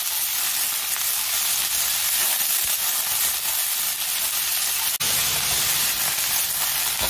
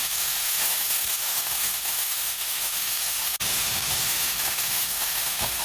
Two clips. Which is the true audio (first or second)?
first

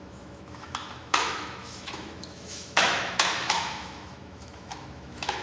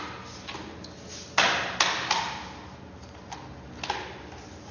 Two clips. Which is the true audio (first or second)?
second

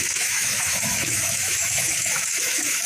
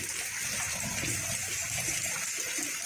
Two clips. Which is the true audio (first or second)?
second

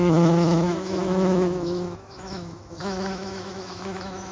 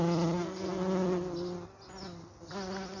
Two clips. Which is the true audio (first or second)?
second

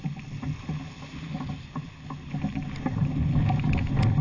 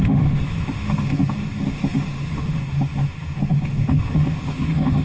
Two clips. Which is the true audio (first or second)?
first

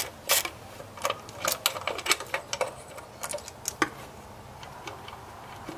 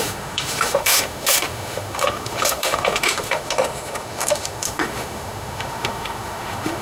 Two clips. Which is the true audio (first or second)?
first